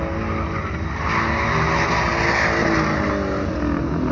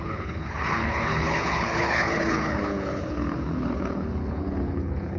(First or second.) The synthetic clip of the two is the second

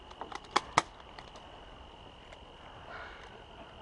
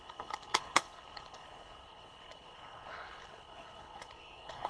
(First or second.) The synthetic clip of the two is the second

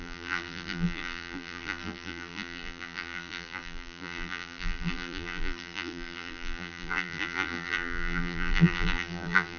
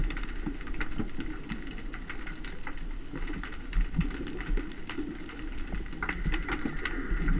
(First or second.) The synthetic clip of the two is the first